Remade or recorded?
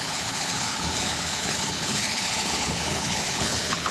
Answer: remade